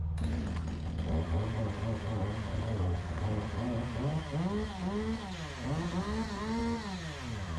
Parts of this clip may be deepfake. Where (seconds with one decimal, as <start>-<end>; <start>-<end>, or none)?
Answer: 2.5-3.2

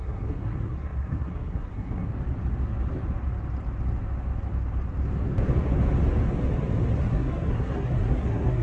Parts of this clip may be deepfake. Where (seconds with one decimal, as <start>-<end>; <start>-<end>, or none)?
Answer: 0.0-2.1; 7.0-8.6

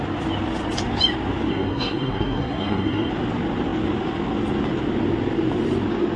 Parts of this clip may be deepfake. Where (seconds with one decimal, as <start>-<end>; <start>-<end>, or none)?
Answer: 1.5-3.1